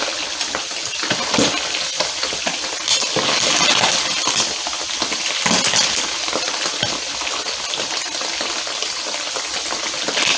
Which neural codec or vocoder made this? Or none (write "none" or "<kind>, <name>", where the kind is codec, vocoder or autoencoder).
none